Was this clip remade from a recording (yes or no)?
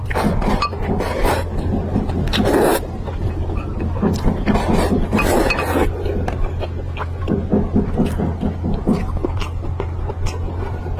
no